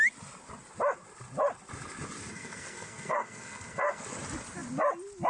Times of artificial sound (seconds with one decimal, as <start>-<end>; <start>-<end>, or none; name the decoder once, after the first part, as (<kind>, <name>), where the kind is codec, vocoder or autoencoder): 2.3-4.0 (codec, SNAC)